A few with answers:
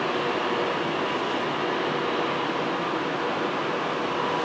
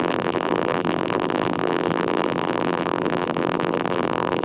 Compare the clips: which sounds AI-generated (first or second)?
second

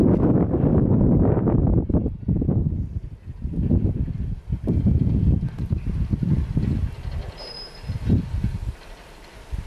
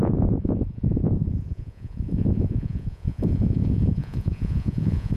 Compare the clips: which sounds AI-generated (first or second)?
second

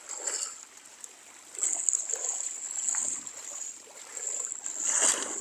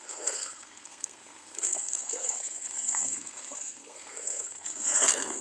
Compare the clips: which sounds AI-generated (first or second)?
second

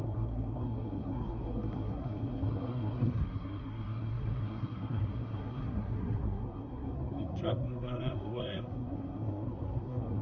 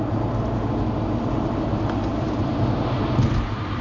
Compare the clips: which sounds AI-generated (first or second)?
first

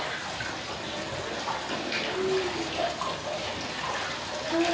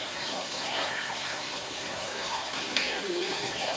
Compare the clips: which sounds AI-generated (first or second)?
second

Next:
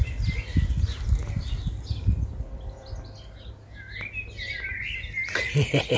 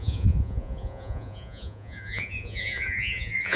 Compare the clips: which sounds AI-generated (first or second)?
second